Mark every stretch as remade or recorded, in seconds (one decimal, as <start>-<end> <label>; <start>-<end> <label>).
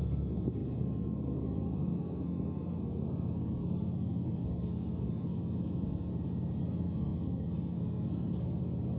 0.0-6.1 remade; 6.1-6.6 recorded; 6.6-9.0 remade